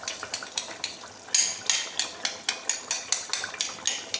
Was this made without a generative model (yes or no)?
yes